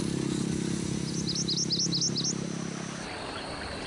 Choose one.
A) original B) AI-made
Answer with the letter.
A